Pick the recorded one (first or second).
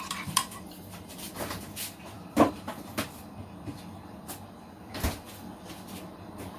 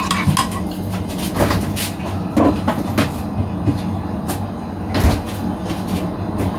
second